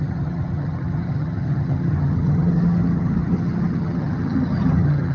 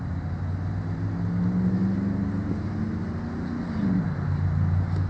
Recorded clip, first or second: second